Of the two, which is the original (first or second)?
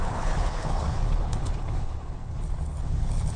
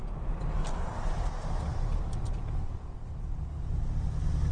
second